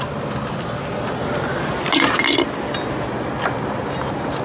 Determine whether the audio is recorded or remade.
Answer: recorded